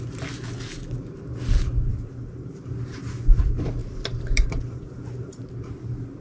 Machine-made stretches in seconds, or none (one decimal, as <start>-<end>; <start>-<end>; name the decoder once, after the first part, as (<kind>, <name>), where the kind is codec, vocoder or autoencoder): 1.9-2.7 (vocoder, BigVGAN v2); 3.8-5.5